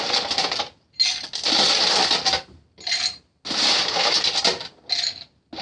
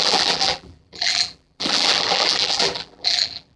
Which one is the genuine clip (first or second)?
first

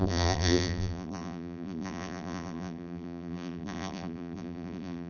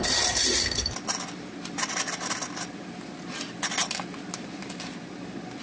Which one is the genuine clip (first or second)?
second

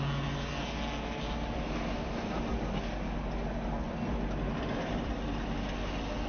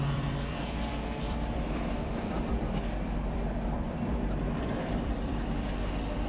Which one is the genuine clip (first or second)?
first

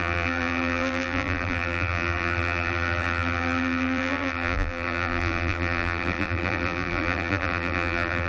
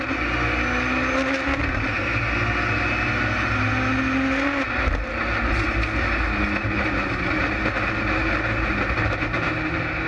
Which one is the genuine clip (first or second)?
second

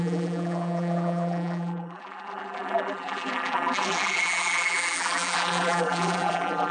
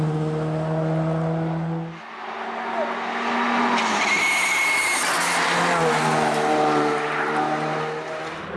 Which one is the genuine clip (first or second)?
second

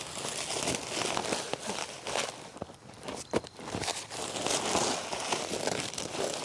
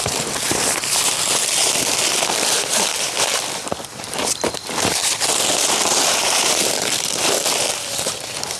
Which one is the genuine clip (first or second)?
first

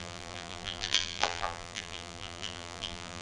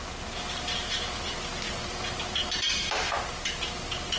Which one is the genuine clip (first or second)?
second